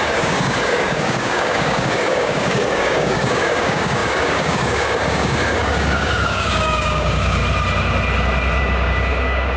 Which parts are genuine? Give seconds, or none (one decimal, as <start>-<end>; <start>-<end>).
7.4-8.6